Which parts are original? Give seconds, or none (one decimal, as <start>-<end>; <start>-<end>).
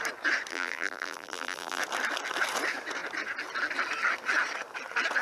0.0-0.5; 1.8-5.2